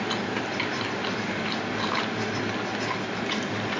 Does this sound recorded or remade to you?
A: recorded